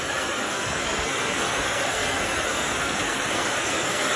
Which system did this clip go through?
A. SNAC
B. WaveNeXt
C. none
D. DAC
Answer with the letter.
A